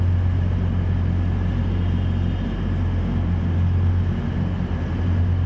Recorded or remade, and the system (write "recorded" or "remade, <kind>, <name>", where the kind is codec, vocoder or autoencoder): recorded